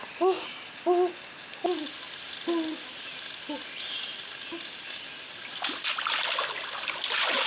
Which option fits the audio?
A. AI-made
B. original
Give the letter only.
B